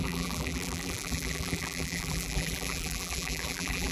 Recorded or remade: remade